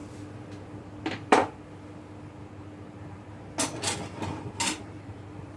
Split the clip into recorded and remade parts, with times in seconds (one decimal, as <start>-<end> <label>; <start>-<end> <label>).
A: 0.0-0.8 recorded; 0.8-1.4 remade; 1.4-4.8 recorded; 4.8-5.6 remade